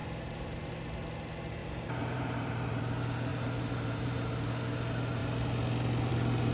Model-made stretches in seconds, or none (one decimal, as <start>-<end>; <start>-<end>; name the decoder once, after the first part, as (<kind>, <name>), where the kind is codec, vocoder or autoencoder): 0.0-0.7 (vocoder, BigVGAN v2); 1.6-2.8; 3.3-4.5